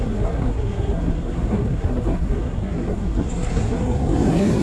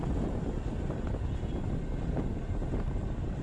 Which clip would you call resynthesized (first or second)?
first